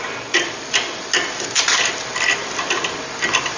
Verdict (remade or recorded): recorded